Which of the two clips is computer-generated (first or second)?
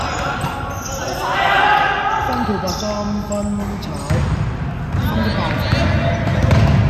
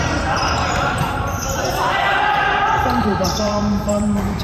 second